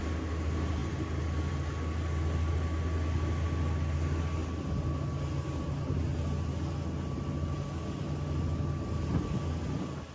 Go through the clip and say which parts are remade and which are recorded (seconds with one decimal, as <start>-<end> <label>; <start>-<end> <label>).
0.0-10.1 recorded